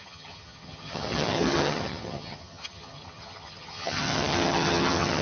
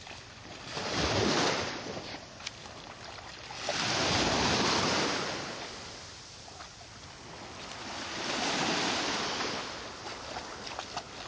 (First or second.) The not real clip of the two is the first